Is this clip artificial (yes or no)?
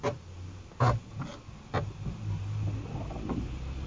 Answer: no